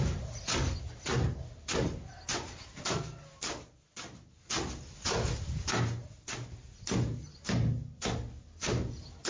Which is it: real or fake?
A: real